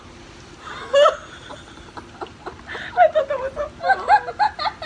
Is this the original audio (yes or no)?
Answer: yes